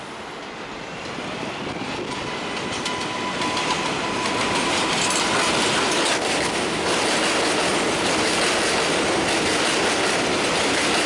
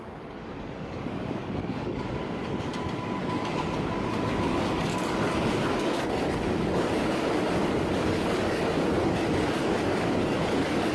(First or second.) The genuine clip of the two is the first